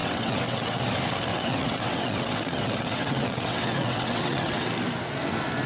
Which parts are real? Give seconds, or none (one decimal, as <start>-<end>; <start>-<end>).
0.8-1.3; 4.7-5.7